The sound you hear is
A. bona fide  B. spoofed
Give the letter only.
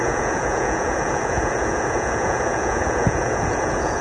B